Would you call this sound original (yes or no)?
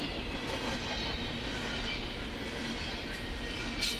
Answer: yes